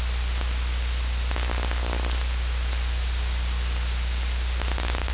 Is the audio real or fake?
real